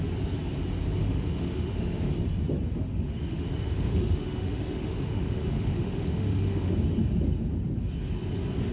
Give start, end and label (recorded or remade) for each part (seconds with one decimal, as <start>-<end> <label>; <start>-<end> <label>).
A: 0.0-1.0 recorded; 1.0-2.1 remade; 2.1-2.7 recorded; 2.7-6.7 remade; 6.7-8.7 recorded